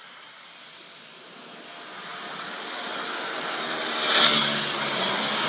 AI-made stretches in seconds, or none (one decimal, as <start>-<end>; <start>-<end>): none